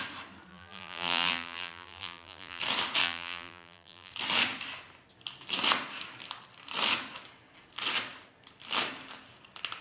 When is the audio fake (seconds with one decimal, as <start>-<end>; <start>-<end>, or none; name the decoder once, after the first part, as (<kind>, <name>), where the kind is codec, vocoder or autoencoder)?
0.5-2.6 (vocoder, BigVGAN v2); 3.0-4.1